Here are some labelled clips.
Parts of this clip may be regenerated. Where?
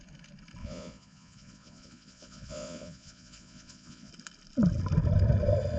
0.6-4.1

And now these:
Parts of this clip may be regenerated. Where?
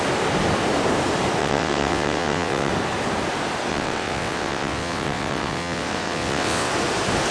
1.4-2.7; 3.7-6.7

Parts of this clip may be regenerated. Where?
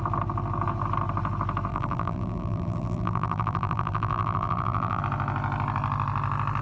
1.7-5.0